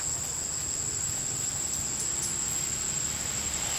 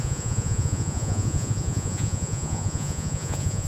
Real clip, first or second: first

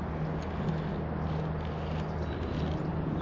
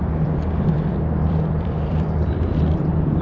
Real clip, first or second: first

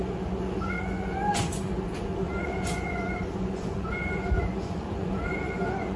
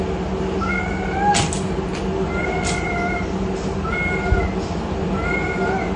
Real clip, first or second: second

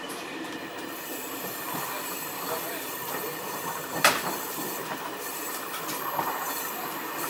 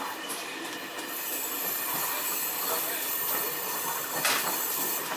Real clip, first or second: second